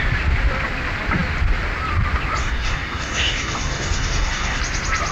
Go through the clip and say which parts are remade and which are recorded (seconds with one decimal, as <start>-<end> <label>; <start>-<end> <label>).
0.0-2.4 recorded; 2.4-4.6 remade; 4.6-5.1 recorded